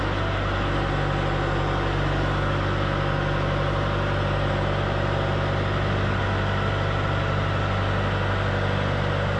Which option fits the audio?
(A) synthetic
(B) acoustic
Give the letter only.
B